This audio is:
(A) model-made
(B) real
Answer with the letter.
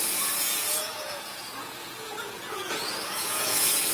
A